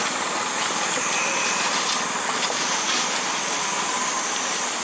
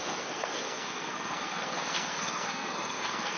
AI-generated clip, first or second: second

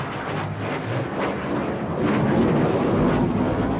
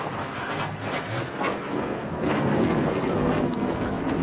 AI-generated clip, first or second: second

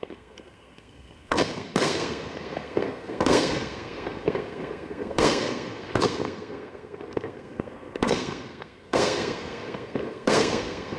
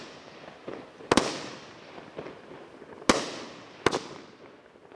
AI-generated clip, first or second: first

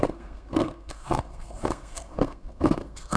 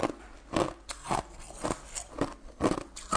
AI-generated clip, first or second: first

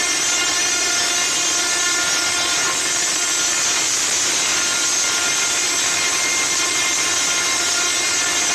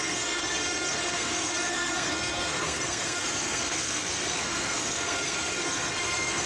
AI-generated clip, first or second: second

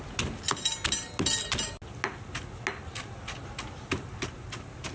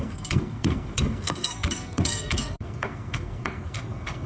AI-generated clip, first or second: second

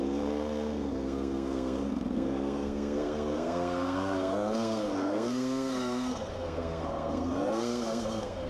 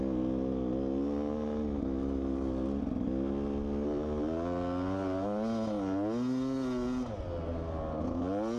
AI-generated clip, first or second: first